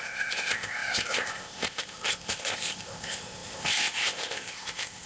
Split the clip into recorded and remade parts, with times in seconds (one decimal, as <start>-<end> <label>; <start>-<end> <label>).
0.0-5.1 remade